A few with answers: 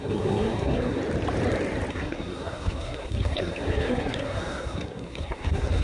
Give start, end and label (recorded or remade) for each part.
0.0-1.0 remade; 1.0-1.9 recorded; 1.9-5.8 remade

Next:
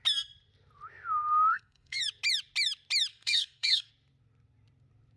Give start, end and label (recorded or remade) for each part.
0.0-1.5 recorded; 1.5-2.0 remade; 2.0-3.1 recorded; 3.1-3.9 remade; 3.9-5.2 recorded

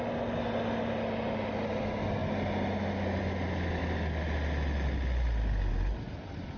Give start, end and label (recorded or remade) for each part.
0.0-6.6 recorded

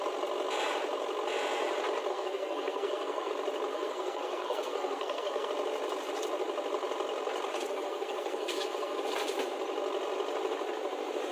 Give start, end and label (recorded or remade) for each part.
0.0-2.1 recorded; 2.1-3.3 remade; 3.3-3.7 recorded; 3.7-5.5 remade; 5.5-7.5 recorded; 7.5-9.0 remade; 9.0-11.3 recorded